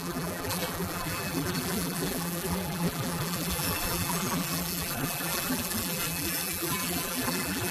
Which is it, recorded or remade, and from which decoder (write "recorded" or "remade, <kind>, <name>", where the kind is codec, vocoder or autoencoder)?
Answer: remade, vocoder, BigVGAN v2